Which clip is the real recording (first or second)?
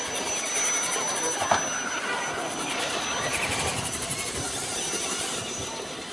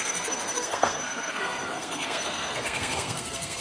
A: first